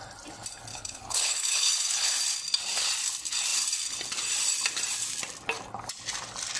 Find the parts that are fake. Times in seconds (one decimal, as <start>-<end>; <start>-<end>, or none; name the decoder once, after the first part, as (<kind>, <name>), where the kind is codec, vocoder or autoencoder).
0.7-2.1 (codec, HILCodec)